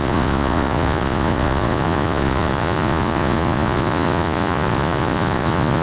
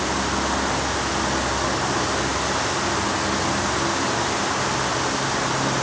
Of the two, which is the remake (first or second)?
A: first